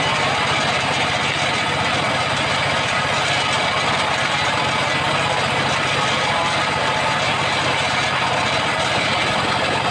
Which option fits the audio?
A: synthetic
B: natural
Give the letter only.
B